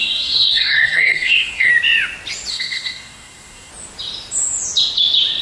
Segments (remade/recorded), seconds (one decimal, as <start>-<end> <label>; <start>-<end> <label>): 0.0-1.7 remade; 1.7-2.5 recorded; 2.5-3.7 remade; 3.7-5.4 recorded